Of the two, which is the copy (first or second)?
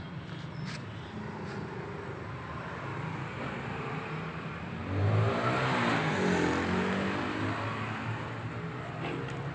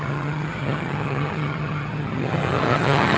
second